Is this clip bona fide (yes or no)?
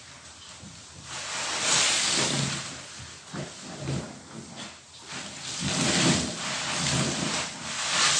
no